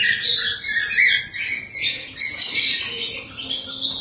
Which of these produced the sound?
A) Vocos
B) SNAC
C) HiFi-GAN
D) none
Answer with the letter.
D